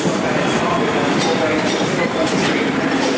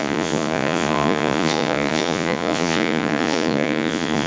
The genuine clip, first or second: first